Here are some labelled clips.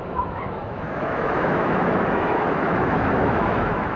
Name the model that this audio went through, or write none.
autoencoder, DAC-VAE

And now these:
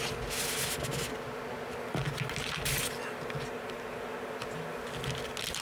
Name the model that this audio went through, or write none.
none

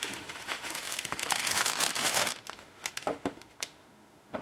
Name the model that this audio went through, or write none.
autoencoder, DAC-VAE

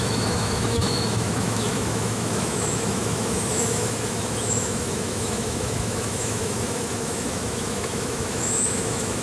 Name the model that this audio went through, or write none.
autoencoder, DAC-VAE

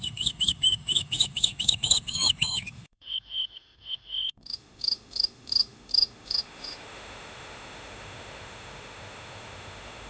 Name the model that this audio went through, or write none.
autoencoder, DAC-VAE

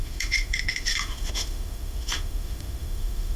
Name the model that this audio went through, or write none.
autoencoder, DAC-VAE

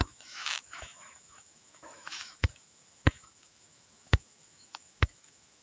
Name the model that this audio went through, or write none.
autoencoder, DAC-VAE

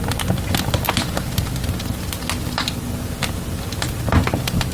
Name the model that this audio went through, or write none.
none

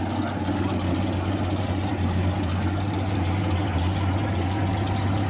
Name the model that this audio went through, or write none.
none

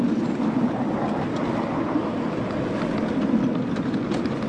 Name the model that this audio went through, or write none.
none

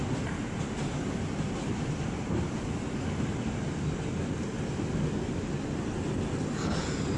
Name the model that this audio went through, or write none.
none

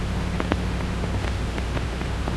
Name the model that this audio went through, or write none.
autoencoder, DAC-VAE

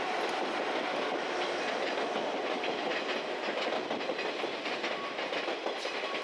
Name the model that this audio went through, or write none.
none